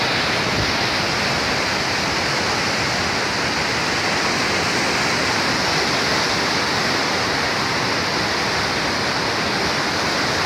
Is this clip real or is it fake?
real